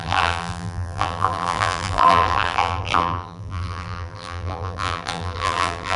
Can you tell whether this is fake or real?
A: fake